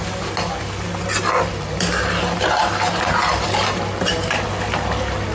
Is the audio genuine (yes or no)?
yes